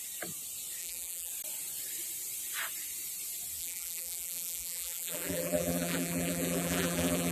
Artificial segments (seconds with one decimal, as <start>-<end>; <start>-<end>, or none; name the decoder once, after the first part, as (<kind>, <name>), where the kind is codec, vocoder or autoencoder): 0.8-1.3 (vocoder, BigVGAN v2); 3.6-7.3